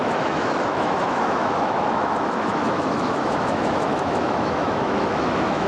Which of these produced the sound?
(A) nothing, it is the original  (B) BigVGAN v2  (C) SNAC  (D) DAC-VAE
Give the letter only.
D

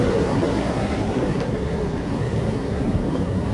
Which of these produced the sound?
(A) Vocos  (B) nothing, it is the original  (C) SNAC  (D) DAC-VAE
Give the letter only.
C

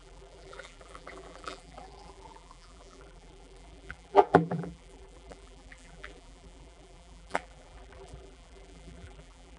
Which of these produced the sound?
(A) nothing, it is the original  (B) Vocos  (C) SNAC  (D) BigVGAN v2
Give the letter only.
D